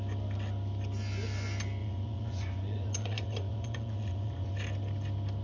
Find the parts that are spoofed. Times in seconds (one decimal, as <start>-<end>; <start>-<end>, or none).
1.8-4.5